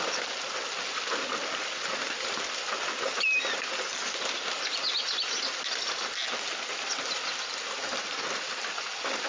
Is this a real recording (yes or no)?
yes